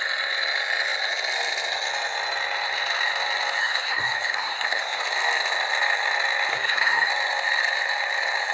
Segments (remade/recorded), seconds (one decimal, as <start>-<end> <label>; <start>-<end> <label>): 0.0-3.6 recorded; 3.6-5.0 remade; 5.0-6.5 recorded; 6.5-7.1 remade; 7.1-8.5 recorded